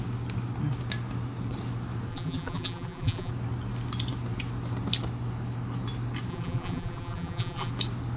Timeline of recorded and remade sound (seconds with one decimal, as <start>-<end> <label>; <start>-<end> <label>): 0.0-2.1 recorded; 2.1-3.3 remade; 3.3-6.3 recorded; 6.3-7.7 remade; 7.7-8.2 recorded